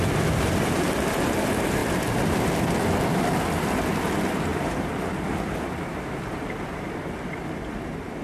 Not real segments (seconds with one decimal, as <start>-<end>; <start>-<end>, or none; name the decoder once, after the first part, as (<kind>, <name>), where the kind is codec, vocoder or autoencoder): none